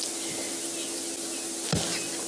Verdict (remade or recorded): recorded